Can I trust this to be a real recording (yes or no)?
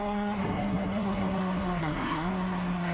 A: no